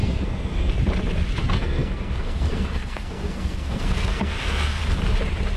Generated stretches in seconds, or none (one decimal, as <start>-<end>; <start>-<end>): 0.0-0.7; 1.4-4.8